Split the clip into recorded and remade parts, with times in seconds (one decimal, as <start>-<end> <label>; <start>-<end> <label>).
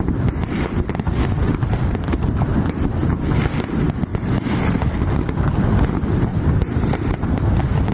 0.0-4.1 recorded; 4.1-4.8 remade; 4.8-6.3 recorded; 6.3-7.4 remade; 7.4-7.9 recorded